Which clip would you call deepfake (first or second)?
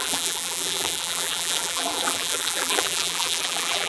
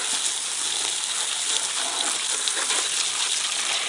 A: first